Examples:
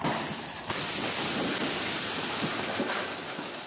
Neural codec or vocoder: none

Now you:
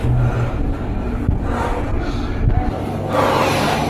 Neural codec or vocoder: none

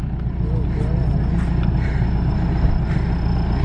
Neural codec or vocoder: none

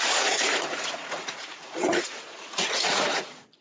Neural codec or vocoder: vocoder, Vocos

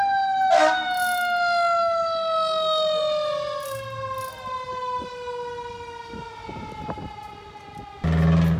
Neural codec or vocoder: none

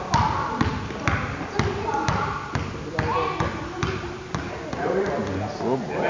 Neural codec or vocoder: none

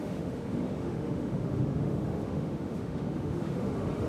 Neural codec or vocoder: autoencoder, DAC-VAE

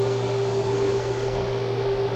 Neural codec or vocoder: codec, SNAC